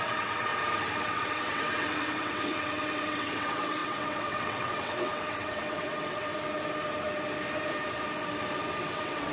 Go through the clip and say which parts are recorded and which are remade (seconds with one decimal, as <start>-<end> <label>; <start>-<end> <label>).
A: 0.0-0.5 remade; 0.5-1.1 recorded; 1.1-6.3 remade; 6.3-8.8 recorded; 8.8-9.3 remade